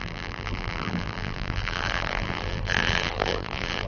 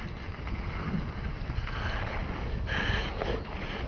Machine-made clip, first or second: first